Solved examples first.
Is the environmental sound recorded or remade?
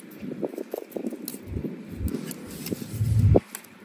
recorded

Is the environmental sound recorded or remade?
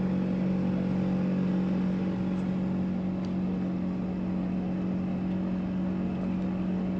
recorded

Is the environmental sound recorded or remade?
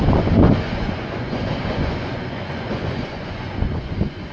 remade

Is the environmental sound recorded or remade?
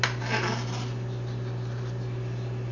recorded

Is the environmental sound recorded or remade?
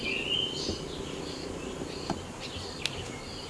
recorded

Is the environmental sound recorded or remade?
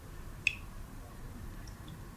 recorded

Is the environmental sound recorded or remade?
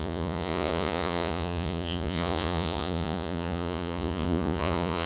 remade